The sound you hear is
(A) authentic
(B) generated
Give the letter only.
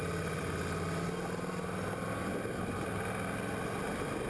A